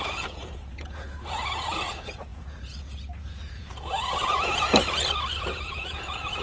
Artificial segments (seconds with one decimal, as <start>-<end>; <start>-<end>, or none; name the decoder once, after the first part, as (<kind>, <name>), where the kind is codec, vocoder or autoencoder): 0.0-4.5 (vocoder, Vocos); 5.4-6.4